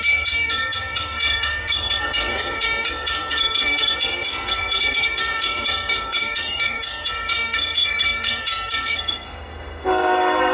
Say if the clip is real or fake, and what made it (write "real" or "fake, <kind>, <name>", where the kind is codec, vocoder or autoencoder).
fake, codec, SNAC